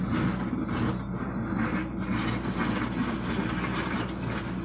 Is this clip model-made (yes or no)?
no